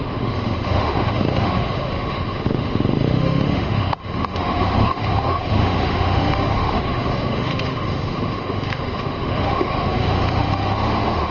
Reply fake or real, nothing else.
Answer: fake